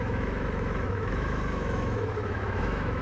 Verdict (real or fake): fake